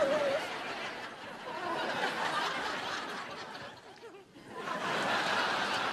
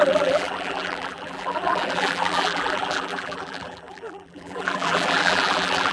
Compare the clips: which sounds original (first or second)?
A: first